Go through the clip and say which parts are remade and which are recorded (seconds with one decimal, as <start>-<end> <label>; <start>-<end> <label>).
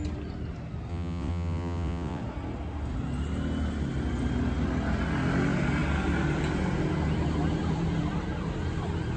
0.0-0.9 recorded; 0.9-2.2 remade; 2.2-9.2 recorded